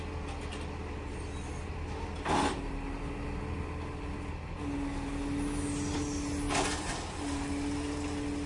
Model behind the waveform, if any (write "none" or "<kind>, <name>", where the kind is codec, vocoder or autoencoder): none